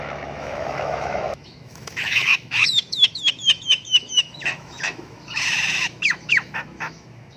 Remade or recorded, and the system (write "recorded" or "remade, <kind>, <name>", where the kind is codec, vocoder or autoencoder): remade, autoencoder, DAC-VAE